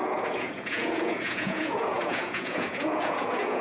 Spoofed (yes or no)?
yes